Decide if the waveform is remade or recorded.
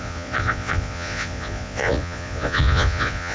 remade